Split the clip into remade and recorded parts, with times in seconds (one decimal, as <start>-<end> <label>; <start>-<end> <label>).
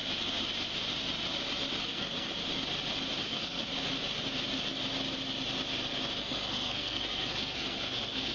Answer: 0.0-1.8 recorded; 1.8-2.3 remade; 2.3-3.2 recorded; 3.2-3.7 remade; 3.7-6.2 recorded; 6.2-8.3 remade